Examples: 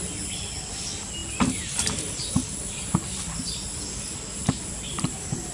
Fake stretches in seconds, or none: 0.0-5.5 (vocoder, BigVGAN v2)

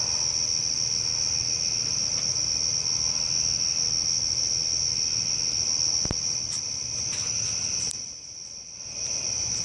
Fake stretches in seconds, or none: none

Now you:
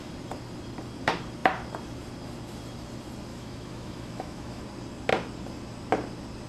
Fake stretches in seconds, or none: 3.3-4.6 (autoencoder, DAC-VAE)

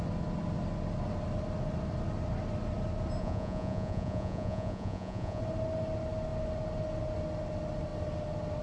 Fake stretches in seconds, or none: 3.2-5.4 (vocoder, Vocos)

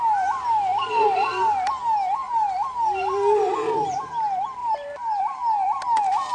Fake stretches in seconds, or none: 0.7-1.7 (vocoder, BigVGAN v2); 4.6-5.2